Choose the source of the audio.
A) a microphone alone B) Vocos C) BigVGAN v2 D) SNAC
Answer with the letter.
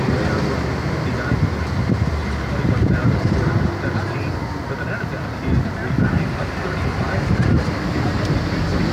A